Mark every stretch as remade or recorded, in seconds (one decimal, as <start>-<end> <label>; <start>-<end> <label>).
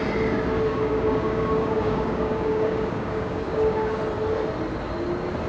0.0-0.7 recorded; 0.7-4.0 remade; 4.0-5.5 recorded